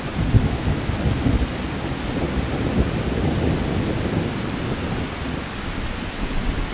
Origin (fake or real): real